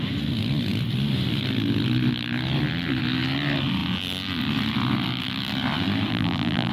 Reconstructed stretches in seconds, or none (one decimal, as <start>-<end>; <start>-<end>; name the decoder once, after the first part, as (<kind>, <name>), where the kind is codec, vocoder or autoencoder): 6.1-6.7 (vocoder, BigVGAN v2)